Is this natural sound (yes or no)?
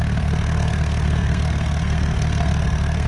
no